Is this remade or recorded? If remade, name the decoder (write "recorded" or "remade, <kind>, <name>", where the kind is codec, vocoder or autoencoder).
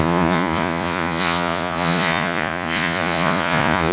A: remade, vocoder, Vocos